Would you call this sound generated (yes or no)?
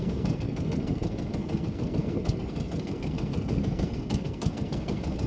yes